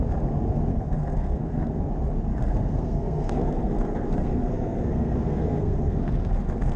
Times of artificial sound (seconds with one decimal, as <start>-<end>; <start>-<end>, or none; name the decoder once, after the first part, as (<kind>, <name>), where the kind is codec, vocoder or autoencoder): 0.7-1.9 (codec, SNAC); 2.3-6.8

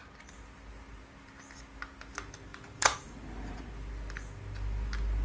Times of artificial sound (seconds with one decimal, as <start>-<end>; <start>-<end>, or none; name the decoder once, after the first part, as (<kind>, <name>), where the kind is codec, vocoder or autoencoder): 2.5-3.6 (vocoder, BigVGAN v2)

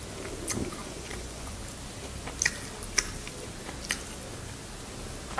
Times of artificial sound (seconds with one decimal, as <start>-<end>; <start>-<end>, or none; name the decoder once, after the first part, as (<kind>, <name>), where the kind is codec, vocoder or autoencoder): 0.8-1.6 (vocoder, Vocos)

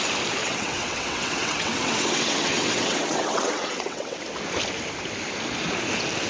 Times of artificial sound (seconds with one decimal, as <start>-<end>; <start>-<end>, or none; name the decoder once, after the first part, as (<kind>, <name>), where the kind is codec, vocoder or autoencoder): 0.4-4.2 (vocoder, WaveNeXt)

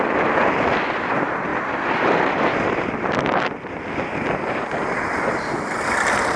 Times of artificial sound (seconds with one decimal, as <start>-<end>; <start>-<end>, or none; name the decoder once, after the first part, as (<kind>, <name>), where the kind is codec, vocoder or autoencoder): 1.5-2.3 (vocoder, BigVGAN v2)

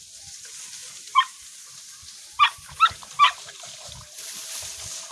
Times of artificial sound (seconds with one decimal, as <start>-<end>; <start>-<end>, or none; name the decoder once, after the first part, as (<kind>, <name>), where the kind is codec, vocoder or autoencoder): 0.8-3.9 (vocoder, BigVGAN v2)

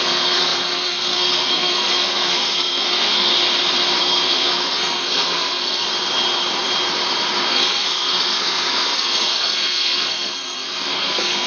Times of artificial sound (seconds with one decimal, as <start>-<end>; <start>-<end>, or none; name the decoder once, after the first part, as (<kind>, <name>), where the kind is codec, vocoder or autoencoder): 0.0-3.3 (codec, SNAC); 4.0-5.9; 7.5-11.5

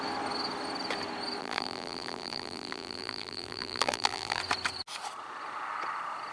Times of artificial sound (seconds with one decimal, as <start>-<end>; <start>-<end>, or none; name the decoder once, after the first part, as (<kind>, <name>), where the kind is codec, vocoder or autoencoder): 1.4-4.4 (vocoder, BigVGAN v2)